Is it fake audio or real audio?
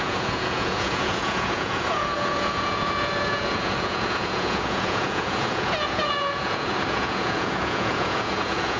fake